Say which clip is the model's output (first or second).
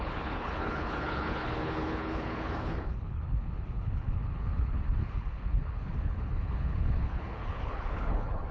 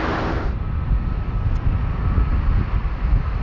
first